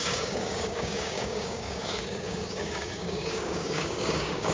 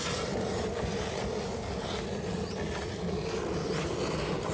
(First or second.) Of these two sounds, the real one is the second